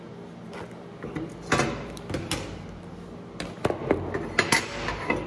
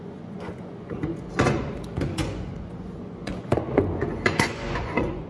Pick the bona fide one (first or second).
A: first